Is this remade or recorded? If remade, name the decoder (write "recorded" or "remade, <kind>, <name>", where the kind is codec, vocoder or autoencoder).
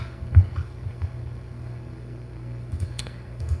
remade, codec, SNAC